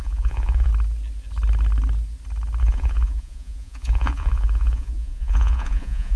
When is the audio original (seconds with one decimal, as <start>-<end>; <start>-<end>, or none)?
0.7-2.6